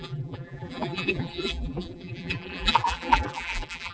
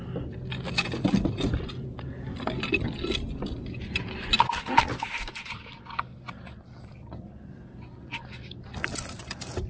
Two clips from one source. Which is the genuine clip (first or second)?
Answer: second